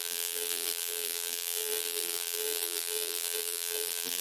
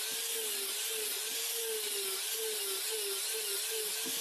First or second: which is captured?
second